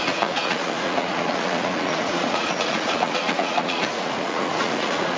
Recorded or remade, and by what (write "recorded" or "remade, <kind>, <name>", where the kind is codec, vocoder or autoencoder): remade, vocoder, Vocos